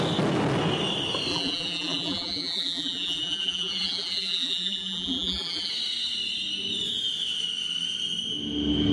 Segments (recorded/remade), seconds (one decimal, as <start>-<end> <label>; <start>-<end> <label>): 0.0-1.3 recorded; 1.3-5.7 remade; 5.7-8.9 recorded